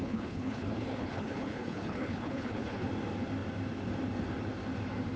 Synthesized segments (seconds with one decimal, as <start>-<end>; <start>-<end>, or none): 0.0-2.9